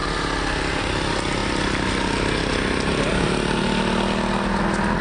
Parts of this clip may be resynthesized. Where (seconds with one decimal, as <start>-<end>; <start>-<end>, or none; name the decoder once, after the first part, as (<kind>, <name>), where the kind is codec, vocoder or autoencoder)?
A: none